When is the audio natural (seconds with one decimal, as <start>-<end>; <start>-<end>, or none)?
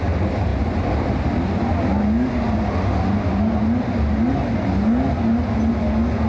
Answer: 0.0-6.3